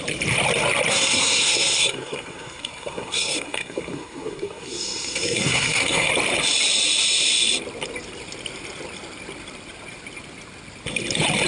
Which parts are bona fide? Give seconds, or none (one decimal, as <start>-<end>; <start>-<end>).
0.0-0.9; 6.1-11.5

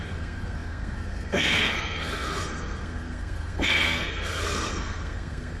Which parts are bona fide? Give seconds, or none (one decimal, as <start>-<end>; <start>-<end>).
none

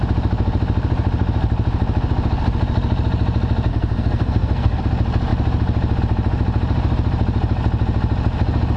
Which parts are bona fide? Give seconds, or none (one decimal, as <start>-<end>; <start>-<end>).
0.0-3.7; 4.8-8.8

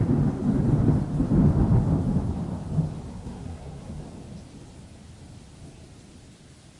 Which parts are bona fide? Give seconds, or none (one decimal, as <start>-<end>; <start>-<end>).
0.0-3.1; 4.0-6.8

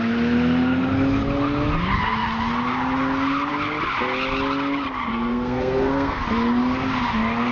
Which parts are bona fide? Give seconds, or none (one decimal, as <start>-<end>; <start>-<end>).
0.0-5.1; 6.2-7.5

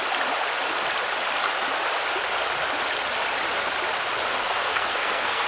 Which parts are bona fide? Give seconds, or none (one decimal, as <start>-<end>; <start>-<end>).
0.0-4.3